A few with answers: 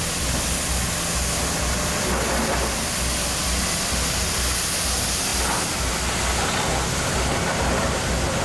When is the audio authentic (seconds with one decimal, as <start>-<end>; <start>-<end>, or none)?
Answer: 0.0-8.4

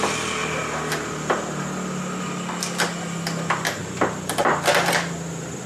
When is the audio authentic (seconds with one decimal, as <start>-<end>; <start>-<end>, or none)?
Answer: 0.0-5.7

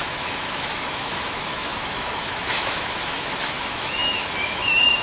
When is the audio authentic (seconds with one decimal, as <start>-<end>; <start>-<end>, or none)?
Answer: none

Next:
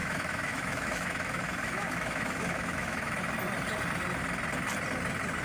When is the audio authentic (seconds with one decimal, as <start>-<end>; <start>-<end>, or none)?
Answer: 3.2-5.4

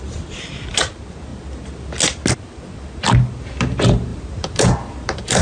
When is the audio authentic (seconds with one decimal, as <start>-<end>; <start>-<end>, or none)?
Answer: 0.0-4.1